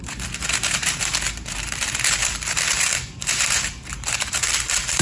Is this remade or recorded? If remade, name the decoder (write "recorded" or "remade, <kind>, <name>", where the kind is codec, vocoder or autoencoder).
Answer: remade, vocoder, BigVGAN v2